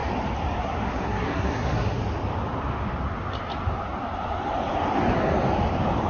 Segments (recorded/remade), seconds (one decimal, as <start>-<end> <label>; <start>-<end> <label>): 0.0-0.6 recorded; 0.6-2.0 remade; 2.0-6.1 recorded